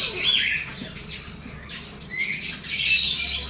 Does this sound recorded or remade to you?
recorded